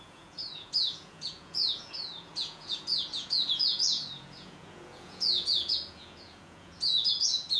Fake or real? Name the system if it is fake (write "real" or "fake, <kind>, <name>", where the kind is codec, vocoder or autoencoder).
fake, vocoder, Vocos